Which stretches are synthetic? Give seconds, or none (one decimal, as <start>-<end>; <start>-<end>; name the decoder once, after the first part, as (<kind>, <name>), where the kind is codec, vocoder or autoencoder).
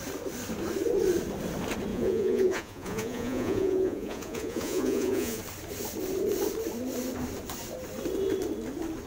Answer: 1.9-5.4 (vocoder, Vocos)